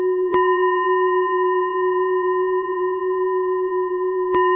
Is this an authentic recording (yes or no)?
no